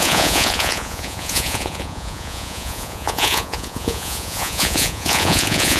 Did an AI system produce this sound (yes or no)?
yes